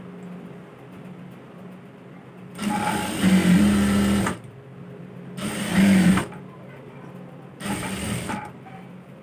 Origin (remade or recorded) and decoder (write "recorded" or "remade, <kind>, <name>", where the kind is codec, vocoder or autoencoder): recorded